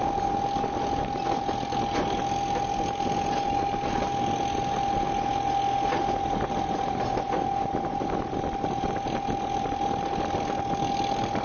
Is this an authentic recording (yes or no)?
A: yes